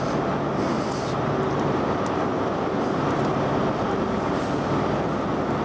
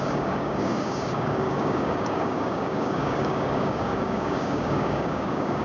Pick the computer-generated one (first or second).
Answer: second